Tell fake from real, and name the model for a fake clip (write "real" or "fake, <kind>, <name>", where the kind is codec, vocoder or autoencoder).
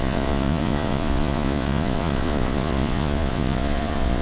fake, vocoder, Vocos